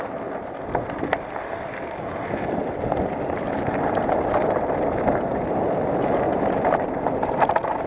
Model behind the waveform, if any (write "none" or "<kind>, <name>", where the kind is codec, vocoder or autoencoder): none